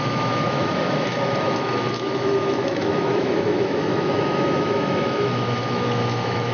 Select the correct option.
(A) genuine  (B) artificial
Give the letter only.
B